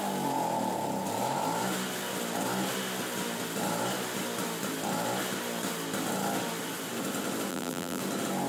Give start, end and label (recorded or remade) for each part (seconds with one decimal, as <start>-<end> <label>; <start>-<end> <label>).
0.0-7.5 recorded; 7.5-8.0 remade; 8.0-8.5 recorded